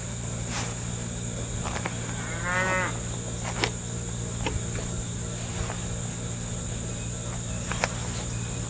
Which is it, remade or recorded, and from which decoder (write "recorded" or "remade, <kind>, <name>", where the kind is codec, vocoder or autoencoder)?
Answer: recorded